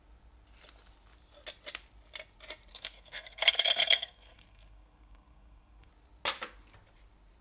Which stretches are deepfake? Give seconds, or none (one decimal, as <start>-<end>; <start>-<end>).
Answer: 2.7-5.9